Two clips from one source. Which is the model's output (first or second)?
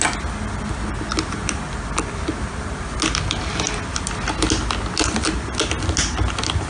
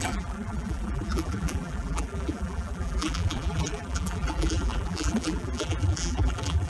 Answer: second